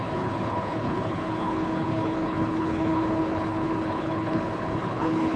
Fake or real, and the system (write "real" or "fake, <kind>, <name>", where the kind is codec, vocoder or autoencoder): fake, codec, HILCodec